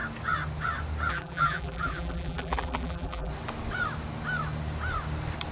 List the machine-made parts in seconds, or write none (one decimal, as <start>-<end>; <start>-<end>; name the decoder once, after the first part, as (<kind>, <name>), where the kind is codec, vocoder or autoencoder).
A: 1.1-3.3 (vocoder, BigVGAN v2)